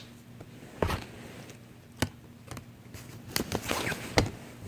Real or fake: real